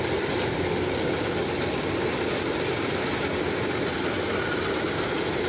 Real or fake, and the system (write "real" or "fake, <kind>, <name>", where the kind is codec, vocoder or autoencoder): real